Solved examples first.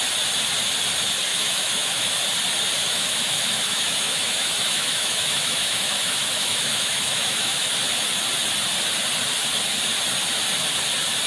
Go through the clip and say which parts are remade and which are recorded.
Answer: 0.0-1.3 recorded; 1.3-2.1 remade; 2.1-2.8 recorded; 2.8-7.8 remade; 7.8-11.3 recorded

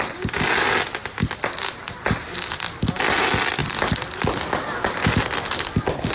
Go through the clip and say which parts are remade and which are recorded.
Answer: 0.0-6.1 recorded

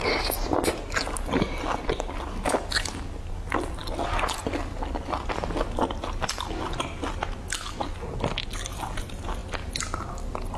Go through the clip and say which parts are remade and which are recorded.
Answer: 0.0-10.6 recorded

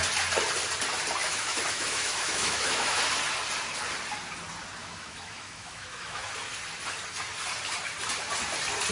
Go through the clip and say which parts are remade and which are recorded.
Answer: 0.0-1.2 recorded; 1.2-3.0 remade; 3.0-4.8 recorded; 4.8-6.3 remade; 6.3-8.9 recorded

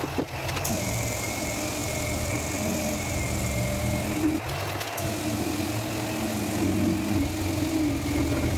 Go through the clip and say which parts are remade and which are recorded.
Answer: 0.0-8.6 recorded